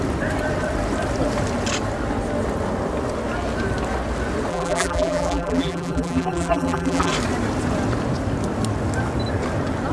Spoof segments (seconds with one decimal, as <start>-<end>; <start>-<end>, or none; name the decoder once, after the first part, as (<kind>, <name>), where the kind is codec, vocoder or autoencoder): 4.5-7.1 (vocoder, BigVGAN v2)

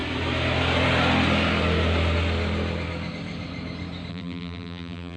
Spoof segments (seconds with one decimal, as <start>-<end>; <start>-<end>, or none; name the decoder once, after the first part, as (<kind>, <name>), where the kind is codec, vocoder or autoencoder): 4.1-5.2 (vocoder, BigVGAN v2)

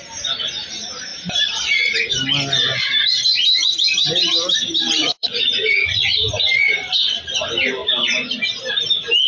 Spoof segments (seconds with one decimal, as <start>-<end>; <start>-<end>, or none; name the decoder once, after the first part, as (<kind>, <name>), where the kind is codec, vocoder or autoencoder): 5.0-6.2 (vocoder, Vocos)

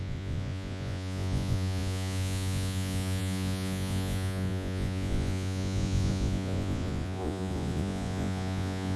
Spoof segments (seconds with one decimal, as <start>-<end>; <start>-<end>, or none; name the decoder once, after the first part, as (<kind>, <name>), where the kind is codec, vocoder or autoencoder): 0.0-9.0 (vocoder, Vocos)

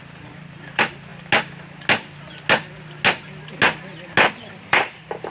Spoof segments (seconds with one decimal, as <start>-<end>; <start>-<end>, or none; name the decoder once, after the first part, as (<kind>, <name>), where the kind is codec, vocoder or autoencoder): 0.0-1.1 (vocoder, BigVGAN v2); 4.3-5.3